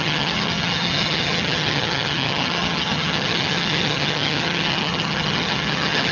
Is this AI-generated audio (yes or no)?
yes